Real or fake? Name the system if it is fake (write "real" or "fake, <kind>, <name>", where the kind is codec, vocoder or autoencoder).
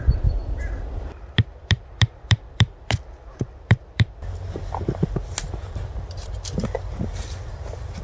fake, vocoder, BigVGAN v2